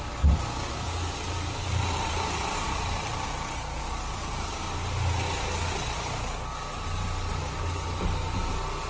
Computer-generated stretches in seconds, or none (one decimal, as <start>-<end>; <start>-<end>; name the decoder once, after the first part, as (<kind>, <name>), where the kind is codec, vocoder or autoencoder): 1.6-4.5 (vocoder, BigVGAN v2); 7.3-8.5